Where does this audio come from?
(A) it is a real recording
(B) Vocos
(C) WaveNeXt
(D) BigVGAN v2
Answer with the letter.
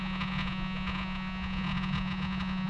B